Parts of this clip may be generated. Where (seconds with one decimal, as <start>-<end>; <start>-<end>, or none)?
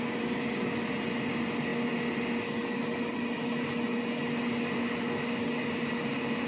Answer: none